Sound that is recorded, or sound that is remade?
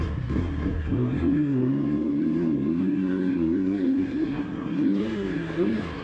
remade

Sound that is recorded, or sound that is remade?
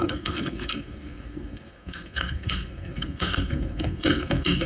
remade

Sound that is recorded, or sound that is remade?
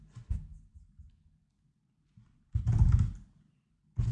recorded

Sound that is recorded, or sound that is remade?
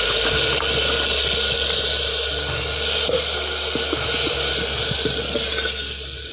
recorded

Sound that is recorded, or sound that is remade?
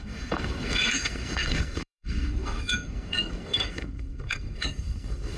remade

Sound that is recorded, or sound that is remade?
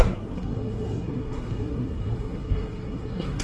remade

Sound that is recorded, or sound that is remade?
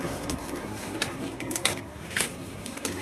remade